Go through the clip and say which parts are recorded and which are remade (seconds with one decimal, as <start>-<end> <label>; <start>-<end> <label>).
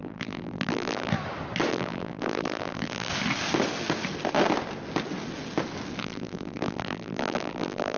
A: 0.0-1.1 remade; 1.1-1.7 recorded; 1.7-3.1 remade; 3.1-6.0 recorded; 6.0-8.0 remade